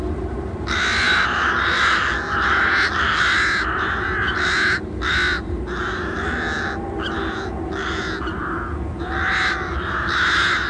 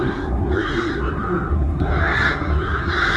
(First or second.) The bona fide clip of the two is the first